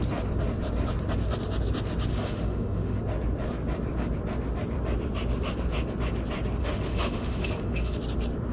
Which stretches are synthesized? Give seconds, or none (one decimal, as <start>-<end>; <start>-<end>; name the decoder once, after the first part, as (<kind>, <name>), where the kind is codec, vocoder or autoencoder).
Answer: 2.1-3.0 (autoencoder, DAC-VAE); 6.6-8.0

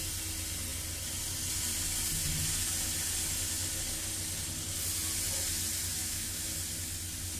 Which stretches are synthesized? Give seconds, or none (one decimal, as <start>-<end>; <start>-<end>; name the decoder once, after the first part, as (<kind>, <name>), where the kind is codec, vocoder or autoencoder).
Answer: 6.0-6.5 (autoencoder, DAC-VAE)

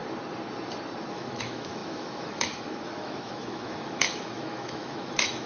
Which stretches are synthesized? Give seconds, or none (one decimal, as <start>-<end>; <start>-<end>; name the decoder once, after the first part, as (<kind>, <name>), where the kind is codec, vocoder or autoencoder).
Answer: 1.1-5.5 (autoencoder, DAC-VAE)